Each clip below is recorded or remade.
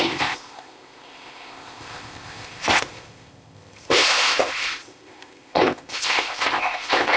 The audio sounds remade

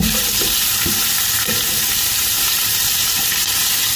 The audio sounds remade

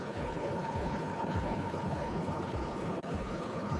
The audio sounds remade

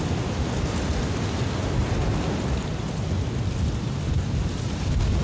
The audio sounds recorded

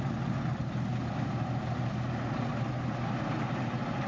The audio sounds recorded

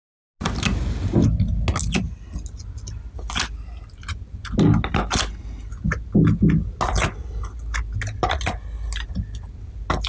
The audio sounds recorded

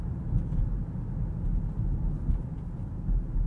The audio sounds recorded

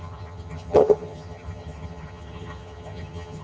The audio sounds remade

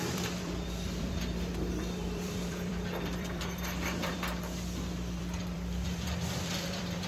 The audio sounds remade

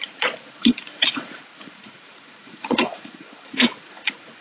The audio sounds remade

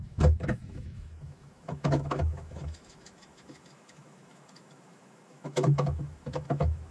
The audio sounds remade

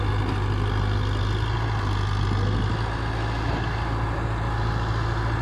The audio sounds recorded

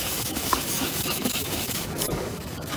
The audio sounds remade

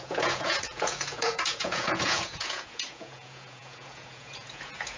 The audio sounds remade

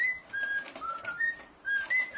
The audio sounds recorded